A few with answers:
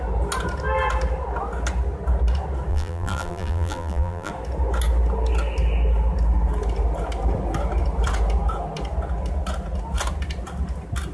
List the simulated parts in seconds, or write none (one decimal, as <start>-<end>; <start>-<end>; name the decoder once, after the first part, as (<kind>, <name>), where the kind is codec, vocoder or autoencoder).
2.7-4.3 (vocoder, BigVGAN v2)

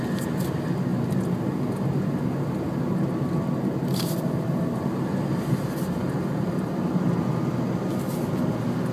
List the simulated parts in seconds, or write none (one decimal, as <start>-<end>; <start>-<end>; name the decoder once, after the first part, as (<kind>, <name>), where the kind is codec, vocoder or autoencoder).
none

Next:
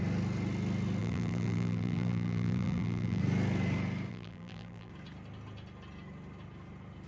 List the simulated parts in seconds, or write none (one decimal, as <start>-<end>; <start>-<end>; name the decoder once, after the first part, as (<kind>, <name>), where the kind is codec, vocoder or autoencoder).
1.0-3.2 (vocoder, BigVGAN v2); 4.1-4.9

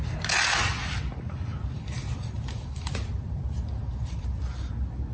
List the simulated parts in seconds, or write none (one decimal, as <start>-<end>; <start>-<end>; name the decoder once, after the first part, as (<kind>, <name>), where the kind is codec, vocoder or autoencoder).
1.5-4.6 (vocoder, BigVGAN v2)

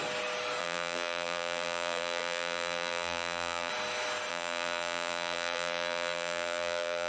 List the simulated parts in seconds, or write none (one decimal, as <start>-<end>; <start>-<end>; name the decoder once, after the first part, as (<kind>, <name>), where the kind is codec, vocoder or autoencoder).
0.6-3.7 (vocoder, BigVGAN v2); 4.3-7.1

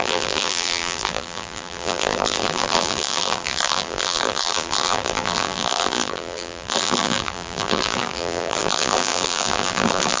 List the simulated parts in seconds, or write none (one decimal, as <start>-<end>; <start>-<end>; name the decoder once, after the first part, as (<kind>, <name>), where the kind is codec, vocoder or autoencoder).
0.0-10.2 (vocoder, BigVGAN v2)

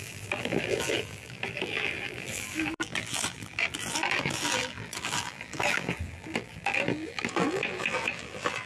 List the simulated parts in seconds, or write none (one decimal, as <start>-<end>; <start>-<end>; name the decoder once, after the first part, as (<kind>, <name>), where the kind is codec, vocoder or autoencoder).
0.0-8.7 (vocoder, BigVGAN v2)